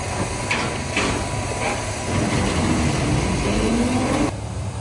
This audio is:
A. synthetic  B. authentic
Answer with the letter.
B